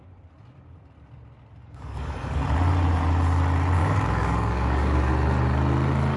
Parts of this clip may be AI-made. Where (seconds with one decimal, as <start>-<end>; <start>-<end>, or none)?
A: 1.6-2.4; 3.8-5.1